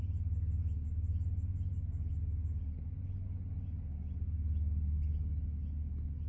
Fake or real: real